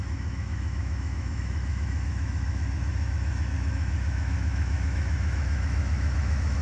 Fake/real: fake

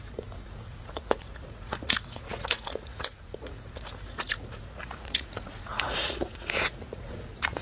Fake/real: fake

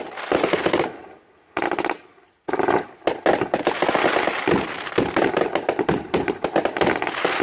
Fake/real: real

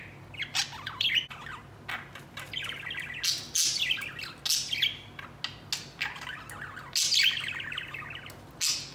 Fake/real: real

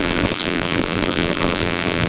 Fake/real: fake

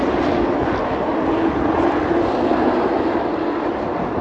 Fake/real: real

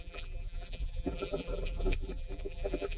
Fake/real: fake